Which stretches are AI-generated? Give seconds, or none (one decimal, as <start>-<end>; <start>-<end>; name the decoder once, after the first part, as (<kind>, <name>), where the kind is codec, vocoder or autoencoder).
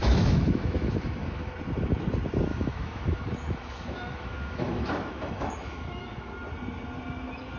0.0-1.5 (autoencoder, DAC-VAE); 2.5-6.3